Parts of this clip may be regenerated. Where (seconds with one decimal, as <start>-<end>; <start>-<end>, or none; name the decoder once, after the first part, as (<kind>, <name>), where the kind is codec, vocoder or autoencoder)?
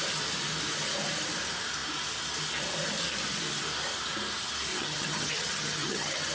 4.7-6.3 (vocoder, HiFi-GAN)